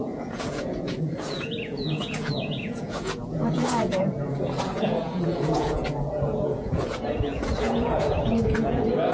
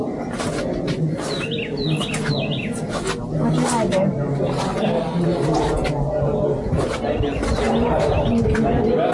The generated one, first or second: first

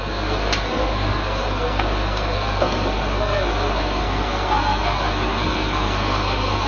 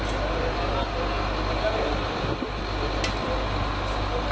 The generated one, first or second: first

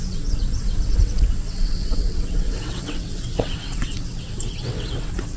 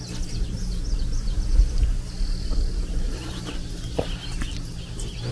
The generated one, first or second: first